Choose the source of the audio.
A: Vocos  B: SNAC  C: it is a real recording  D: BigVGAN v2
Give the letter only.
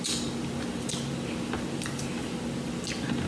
C